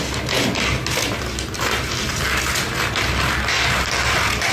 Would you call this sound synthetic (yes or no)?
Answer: no